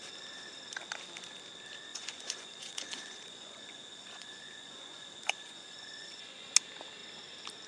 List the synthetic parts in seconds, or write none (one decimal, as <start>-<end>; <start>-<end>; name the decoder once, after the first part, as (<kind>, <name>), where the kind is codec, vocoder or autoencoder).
1.9-6.5 (vocoder, Vocos)